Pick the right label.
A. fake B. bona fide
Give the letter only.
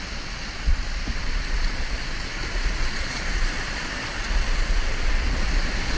A